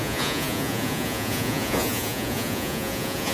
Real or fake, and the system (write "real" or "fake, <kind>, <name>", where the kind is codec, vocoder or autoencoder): fake, vocoder, Vocos